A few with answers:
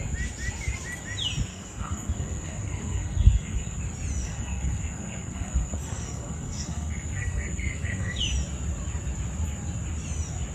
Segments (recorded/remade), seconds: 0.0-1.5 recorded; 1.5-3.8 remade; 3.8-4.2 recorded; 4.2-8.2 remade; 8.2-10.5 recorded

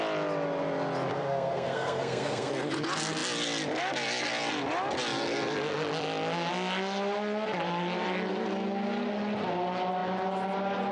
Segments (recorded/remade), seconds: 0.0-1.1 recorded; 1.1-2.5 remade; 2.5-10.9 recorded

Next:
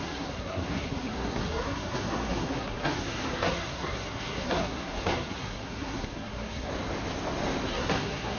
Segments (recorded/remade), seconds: 0.0-6.7 remade; 6.7-7.7 recorded; 7.7-8.4 remade

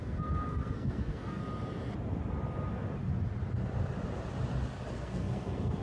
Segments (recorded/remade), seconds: 0.0-1.4 remade; 1.4-4.9 recorded; 4.9-5.8 remade